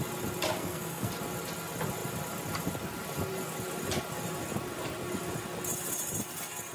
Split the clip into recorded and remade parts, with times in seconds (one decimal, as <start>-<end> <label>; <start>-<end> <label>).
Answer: 0.0-0.6 recorded; 0.6-1.1 remade; 1.1-6.7 recorded